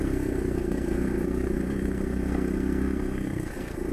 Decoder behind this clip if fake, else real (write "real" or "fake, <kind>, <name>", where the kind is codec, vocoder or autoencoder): fake, codec, SNAC